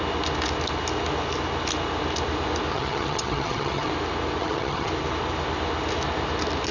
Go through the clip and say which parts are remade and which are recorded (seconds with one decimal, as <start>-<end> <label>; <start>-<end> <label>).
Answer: 0.0-2.7 recorded; 2.7-3.9 remade; 3.9-4.4 recorded; 4.4-4.9 remade; 4.9-6.7 recorded